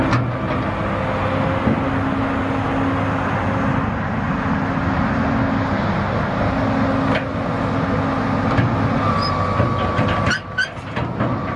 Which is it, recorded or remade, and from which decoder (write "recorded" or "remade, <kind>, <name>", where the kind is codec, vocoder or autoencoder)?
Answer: recorded